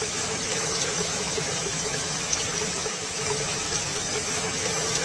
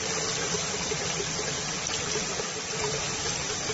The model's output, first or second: first